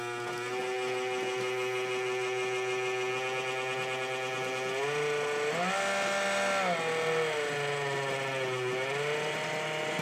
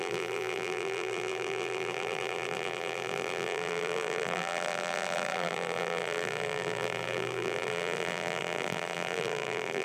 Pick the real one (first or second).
first